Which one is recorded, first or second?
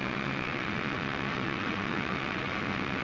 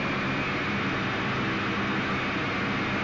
second